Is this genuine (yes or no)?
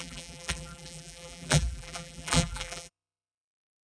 no